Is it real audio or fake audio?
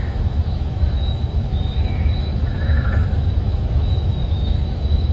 fake